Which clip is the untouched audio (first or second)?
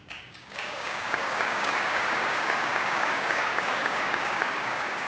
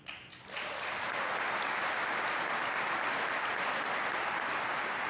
second